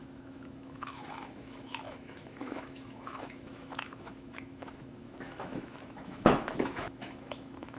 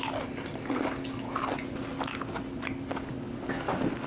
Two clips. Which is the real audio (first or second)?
second